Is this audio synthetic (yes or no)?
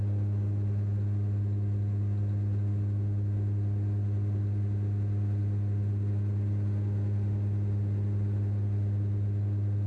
no